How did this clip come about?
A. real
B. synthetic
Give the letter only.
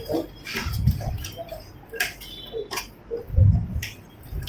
A